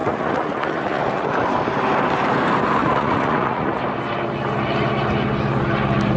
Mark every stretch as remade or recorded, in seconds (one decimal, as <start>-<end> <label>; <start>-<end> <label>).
0.0-1.3 remade; 1.3-2.8 recorded; 2.8-3.8 remade; 3.8-6.2 recorded